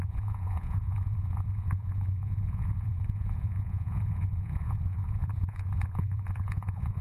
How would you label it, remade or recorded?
remade